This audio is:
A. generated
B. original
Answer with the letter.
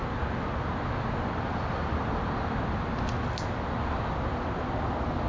B